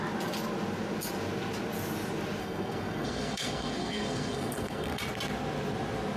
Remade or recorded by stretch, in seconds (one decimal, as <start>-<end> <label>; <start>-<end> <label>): 0.0-2.4 recorded; 2.4-5.0 remade; 5.0-6.2 recorded